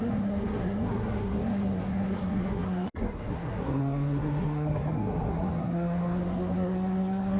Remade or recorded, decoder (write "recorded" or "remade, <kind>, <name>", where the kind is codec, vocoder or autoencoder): remade, codec, SNAC